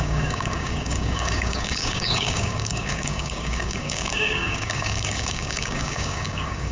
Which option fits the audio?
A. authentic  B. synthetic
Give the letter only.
B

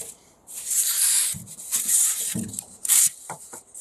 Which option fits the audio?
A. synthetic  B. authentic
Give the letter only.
A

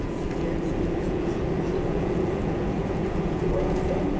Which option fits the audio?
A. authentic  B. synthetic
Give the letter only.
B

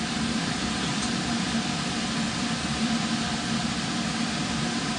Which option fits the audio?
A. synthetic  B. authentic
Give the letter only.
A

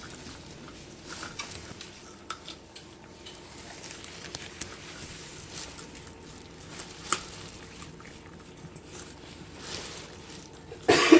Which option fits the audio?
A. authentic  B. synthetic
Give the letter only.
A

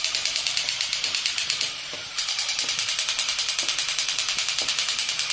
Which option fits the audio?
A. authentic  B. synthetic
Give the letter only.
B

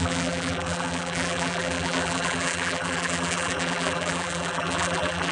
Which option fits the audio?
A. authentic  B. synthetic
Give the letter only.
B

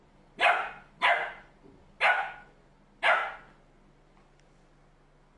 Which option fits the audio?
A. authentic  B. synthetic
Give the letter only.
A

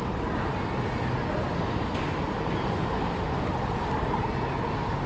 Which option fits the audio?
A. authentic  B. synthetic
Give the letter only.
A